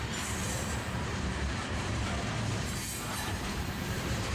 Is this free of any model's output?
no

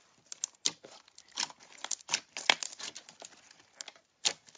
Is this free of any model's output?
yes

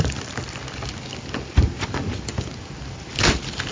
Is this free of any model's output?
yes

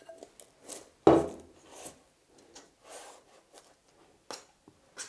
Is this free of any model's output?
yes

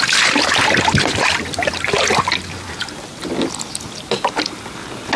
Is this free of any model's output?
yes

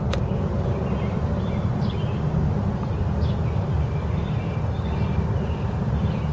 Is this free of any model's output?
yes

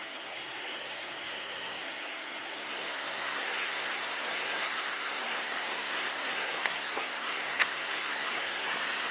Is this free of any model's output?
no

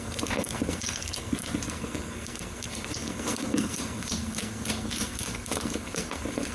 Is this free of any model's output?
no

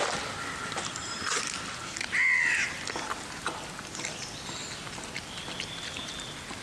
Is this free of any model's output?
yes